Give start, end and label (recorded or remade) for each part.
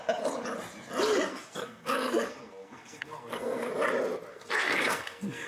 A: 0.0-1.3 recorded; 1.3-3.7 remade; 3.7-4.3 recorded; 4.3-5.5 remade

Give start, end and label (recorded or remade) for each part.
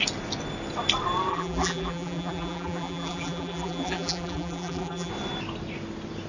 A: 0.0-1.3 recorded; 1.3-5.1 remade; 5.1-6.3 recorded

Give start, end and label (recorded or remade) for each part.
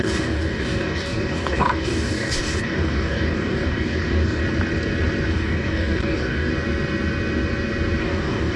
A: 0.0-4.4 remade; 4.4-5.3 recorded; 5.3-6.5 remade; 6.5-8.0 recorded; 8.0-8.6 remade